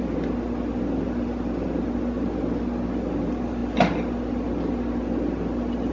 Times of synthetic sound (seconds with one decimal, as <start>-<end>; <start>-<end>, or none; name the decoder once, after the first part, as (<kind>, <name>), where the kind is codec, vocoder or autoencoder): none